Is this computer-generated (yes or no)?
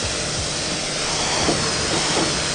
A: no